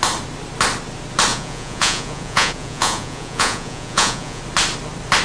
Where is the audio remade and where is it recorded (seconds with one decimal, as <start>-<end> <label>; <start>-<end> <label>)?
0.0-1.3 recorded; 1.3-4.4 remade; 4.4-5.2 recorded